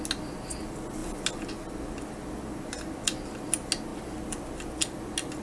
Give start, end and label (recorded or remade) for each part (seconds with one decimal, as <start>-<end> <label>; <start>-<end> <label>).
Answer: 0.0-5.4 recorded